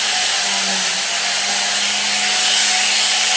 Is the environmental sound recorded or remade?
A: recorded